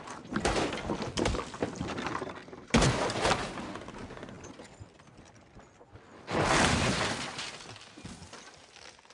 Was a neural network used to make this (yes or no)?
no